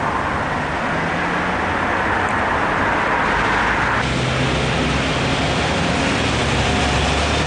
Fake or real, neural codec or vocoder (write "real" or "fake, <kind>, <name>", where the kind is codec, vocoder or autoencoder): real